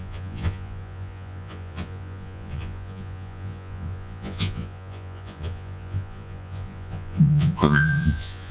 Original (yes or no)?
no